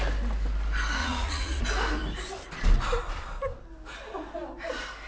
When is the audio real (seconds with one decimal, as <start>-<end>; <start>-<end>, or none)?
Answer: 0.0-1.0; 1.6-5.1